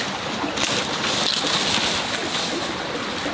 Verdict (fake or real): real